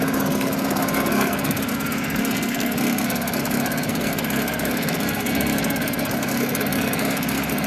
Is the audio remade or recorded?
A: remade